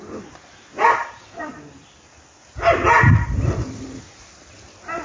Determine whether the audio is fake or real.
real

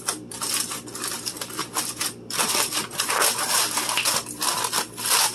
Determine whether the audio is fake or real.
real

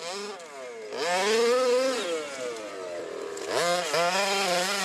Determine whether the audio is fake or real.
real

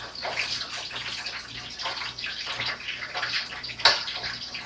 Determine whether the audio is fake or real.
real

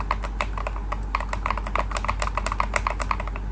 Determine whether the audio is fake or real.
real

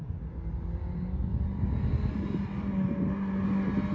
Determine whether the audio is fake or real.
real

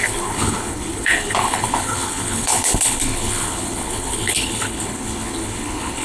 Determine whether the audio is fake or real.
fake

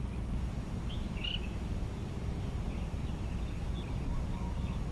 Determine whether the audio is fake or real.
real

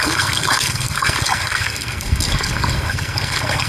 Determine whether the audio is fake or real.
fake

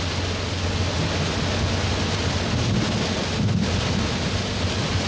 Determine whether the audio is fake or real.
real